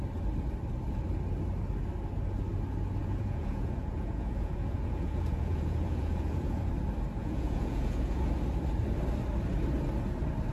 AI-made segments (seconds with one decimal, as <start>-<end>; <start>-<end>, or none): 3.0-6.7; 7.2-8.3